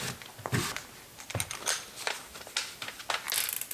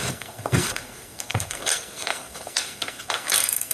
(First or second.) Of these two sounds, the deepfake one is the second